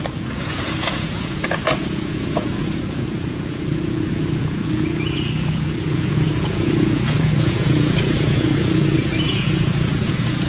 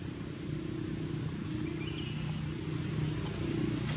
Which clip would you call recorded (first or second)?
second